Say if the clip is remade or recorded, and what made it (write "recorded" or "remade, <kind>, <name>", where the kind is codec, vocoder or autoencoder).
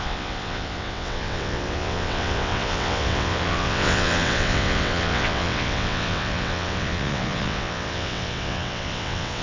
remade, vocoder, WaveNeXt